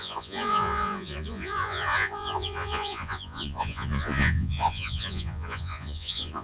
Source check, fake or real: fake